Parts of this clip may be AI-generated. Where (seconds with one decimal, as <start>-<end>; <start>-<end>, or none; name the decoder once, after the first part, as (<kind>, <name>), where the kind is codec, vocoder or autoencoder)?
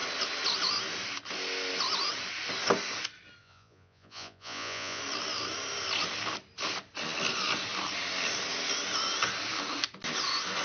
3.4-5.0 (vocoder, Vocos)